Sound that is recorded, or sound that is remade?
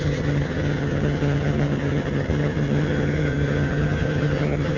remade